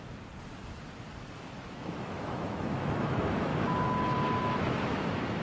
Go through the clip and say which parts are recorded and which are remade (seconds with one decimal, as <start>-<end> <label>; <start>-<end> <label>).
0.0-1.6 recorded; 1.6-3.5 remade; 3.5-4.4 recorded; 4.4-5.4 remade